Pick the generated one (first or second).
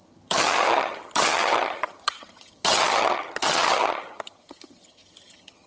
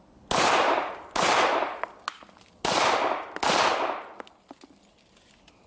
first